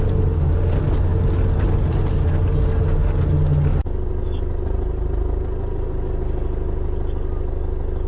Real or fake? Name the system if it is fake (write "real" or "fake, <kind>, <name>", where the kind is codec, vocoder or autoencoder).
real